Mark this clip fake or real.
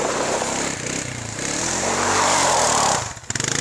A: fake